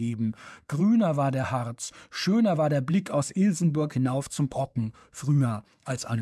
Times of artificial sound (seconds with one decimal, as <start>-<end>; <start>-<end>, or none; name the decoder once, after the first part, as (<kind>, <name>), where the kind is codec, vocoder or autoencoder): 0.0-0.8 (codec, SNAC); 2.9-6.2